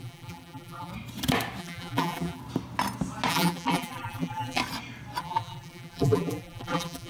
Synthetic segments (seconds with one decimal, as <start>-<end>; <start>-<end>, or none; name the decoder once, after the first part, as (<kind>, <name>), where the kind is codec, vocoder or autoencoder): 0.0-0.9 (vocoder, BigVGAN v2); 1.6-2.4; 3.3-4.6; 5.2-7.1